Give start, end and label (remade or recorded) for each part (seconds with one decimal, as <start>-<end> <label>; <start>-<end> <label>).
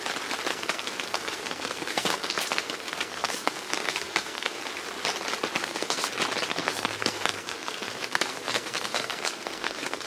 0.0-0.5 recorded; 0.5-4.7 remade; 4.7-5.6 recorded; 5.6-6.1 remade; 6.1-6.5 recorded; 6.5-10.1 remade